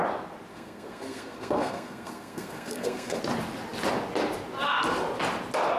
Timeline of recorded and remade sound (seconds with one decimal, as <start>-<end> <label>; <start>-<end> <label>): 0.0-0.5 recorded; 0.5-3.2 remade; 3.2-5.8 recorded